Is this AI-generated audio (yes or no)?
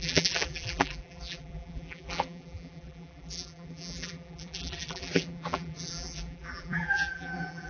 yes